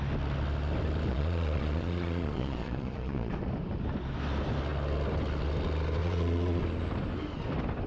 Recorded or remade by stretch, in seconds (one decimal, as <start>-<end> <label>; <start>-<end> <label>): 0.0-1.1 recorded; 1.1-3.3 remade; 3.3-6.0 recorded; 6.0-6.6 remade; 6.6-7.9 recorded